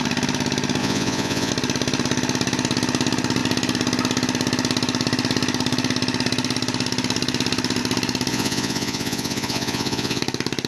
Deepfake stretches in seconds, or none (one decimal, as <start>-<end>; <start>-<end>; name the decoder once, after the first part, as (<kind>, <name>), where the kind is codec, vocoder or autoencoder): 0.8-1.5 (vocoder, Vocos); 8.3-10.2